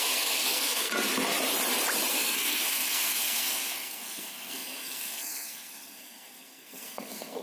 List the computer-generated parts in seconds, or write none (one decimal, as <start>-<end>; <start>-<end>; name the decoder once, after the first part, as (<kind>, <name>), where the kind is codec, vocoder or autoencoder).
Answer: 0.0-0.9 (codec, SNAC); 2.1-7.4